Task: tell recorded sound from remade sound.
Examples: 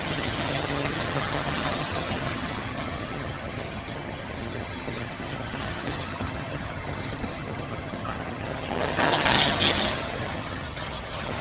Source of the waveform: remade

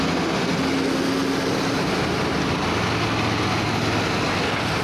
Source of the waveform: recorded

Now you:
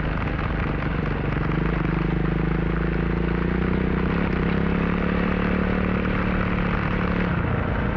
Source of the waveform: recorded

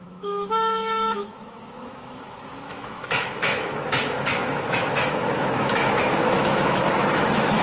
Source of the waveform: remade